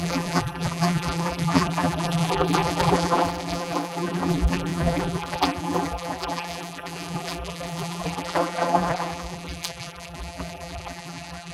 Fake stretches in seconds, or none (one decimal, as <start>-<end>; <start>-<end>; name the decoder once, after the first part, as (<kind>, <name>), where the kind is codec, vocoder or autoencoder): 0.0-11.5 (vocoder, BigVGAN v2)